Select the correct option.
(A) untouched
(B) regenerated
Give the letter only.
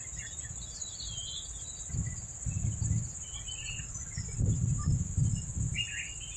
A